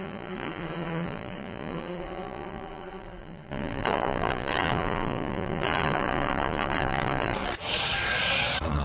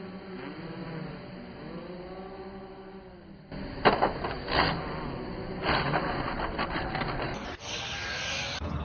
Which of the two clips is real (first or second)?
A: second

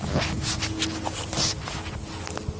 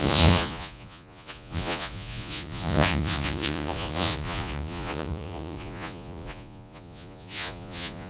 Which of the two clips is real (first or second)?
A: first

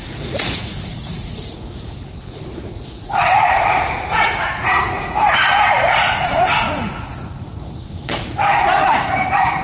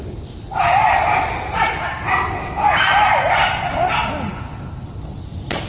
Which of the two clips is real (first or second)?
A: second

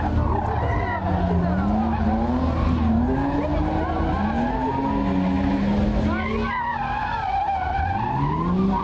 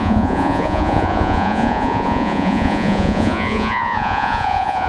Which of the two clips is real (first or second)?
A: first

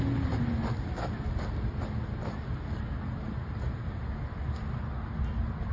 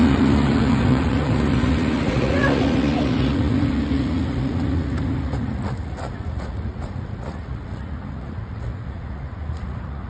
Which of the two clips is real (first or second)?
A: first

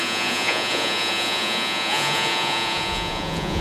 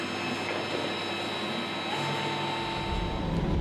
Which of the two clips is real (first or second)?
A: second